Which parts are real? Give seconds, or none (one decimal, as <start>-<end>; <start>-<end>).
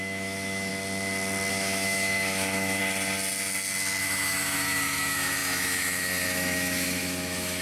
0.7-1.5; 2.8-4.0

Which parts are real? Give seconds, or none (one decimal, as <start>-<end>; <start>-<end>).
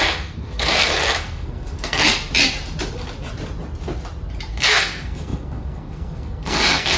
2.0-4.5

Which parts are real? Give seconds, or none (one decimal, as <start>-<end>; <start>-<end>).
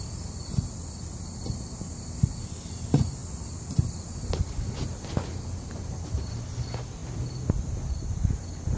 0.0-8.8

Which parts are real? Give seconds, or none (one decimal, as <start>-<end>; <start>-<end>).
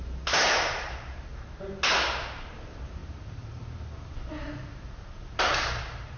1.3-2.2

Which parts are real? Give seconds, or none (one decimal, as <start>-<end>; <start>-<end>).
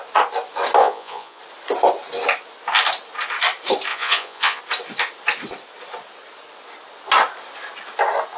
0.0-0.8; 1.4-3.9; 4.6-8.4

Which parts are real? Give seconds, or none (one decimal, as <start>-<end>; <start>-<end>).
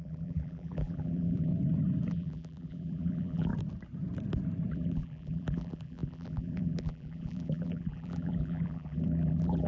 1.5-2.1; 3.5-4.7